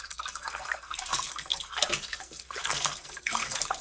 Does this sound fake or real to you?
fake